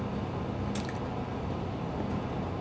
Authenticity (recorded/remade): recorded